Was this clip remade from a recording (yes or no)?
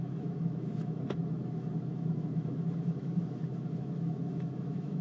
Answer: yes